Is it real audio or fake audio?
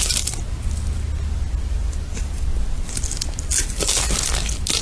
real